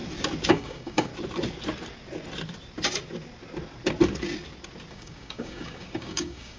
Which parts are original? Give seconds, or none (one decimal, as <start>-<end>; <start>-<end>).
0.0-0.5; 1.1-4.9